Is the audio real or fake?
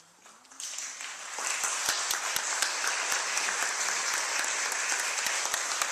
real